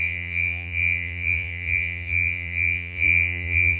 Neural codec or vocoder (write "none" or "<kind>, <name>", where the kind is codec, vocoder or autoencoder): vocoder, Vocos